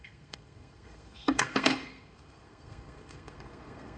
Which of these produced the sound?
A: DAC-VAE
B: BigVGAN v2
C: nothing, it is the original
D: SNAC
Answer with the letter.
D